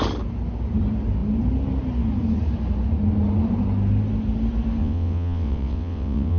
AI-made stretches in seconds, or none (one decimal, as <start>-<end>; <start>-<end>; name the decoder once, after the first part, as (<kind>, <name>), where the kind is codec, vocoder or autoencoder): 4.8-6.4 (vocoder, WaveNeXt)